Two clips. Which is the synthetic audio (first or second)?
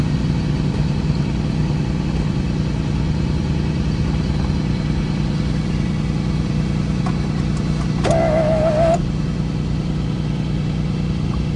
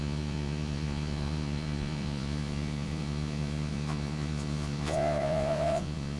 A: second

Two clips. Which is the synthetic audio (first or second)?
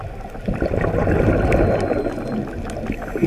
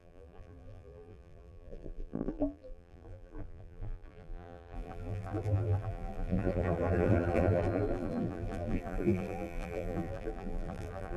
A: second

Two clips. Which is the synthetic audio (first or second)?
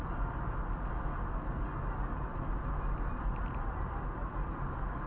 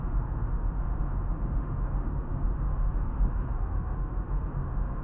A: second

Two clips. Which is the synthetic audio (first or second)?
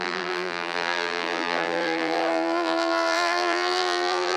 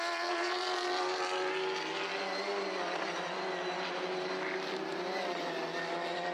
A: first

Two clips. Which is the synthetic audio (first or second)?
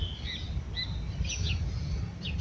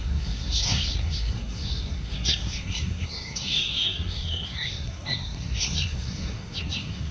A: second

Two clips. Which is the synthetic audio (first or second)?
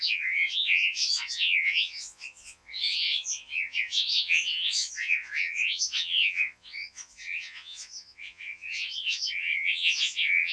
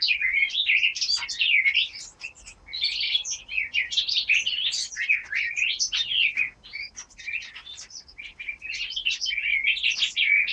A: first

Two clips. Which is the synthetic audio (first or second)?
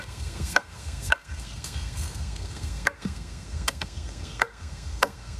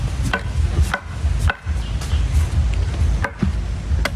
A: first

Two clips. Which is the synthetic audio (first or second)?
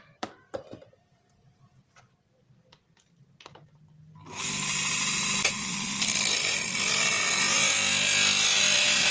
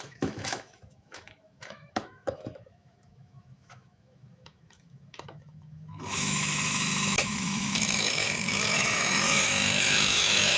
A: second